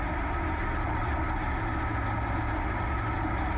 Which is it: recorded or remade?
recorded